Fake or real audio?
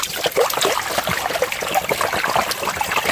real